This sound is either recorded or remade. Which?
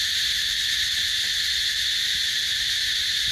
recorded